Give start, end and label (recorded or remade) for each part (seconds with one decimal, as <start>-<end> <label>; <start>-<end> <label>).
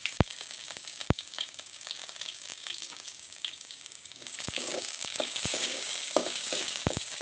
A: 0.0-7.2 remade